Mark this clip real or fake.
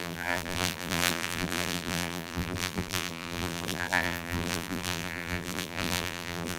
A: fake